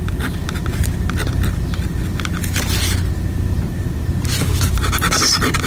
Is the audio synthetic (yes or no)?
no